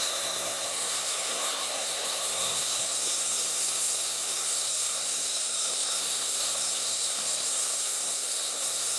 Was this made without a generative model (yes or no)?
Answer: no